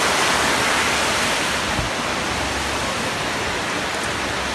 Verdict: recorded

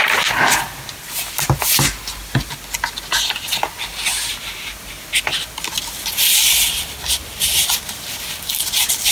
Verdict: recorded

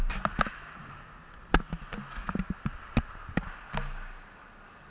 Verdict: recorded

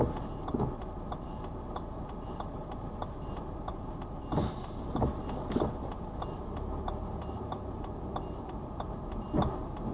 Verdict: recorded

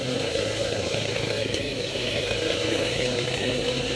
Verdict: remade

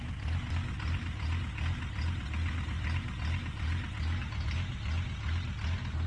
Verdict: recorded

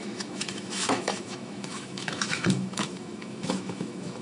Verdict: remade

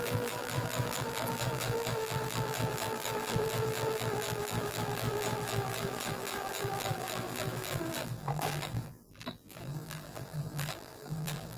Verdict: remade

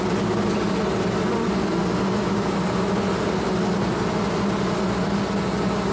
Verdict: recorded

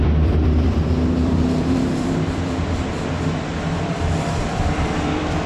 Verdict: remade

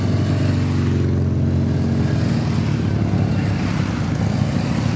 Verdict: recorded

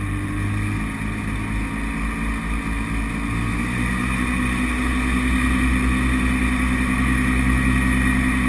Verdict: recorded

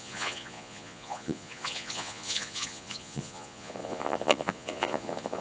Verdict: remade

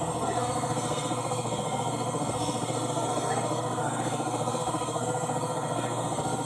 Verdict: remade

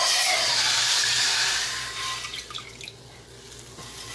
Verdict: recorded